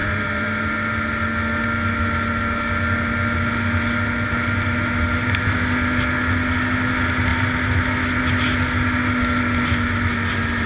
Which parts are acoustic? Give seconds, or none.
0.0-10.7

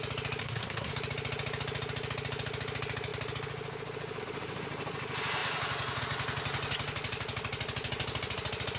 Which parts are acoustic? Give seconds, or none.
0.0-0.4; 0.9-8.8

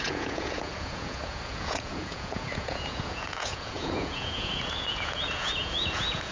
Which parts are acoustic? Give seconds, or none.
none